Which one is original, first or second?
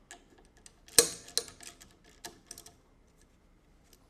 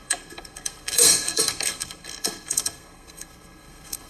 first